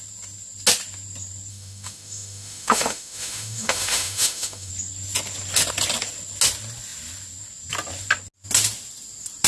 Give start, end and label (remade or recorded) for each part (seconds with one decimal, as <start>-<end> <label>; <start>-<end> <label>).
0.0-1.5 recorded; 1.5-4.7 remade; 4.7-9.5 recorded